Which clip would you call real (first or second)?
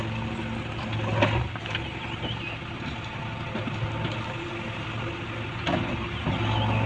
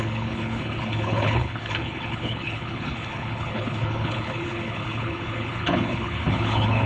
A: first